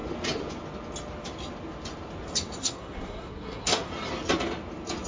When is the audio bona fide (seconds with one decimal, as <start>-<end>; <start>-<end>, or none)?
0.0-2.6; 3.9-5.1

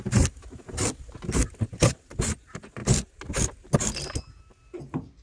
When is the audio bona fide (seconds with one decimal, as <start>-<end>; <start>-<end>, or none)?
0.0-5.2

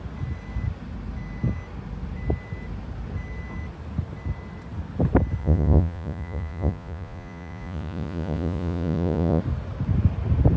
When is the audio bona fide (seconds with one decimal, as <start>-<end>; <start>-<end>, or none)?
0.0-5.4; 9.4-10.6

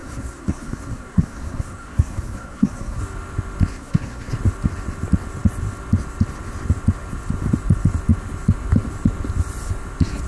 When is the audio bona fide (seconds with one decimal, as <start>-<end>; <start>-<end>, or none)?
3.0-3.7; 4.3-10.3

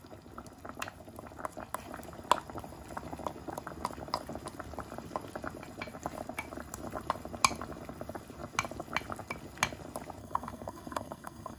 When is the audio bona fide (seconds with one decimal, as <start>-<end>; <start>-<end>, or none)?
0.0-10.2

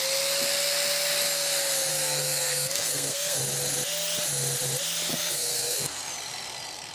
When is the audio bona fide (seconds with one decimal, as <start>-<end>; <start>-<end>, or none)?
0.0-1.9; 3.4-5.1; 6.0-6.9

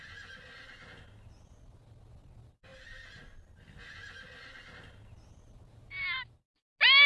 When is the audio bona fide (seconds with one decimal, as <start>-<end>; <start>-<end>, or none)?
0.0-7.1